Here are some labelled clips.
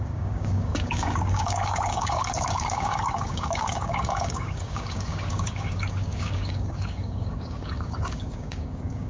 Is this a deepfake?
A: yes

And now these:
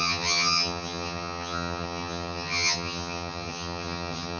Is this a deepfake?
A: yes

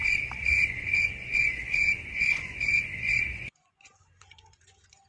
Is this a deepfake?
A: yes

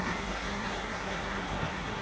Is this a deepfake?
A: yes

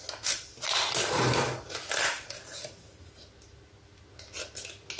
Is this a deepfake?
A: no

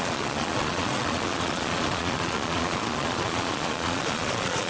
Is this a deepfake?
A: yes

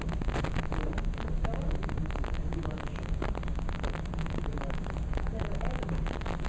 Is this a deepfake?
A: no